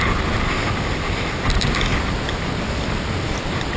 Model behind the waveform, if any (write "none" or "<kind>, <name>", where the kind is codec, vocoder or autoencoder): none